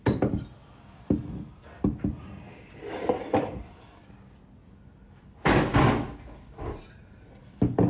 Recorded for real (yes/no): yes